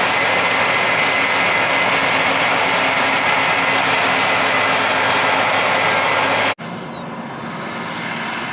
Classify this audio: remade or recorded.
recorded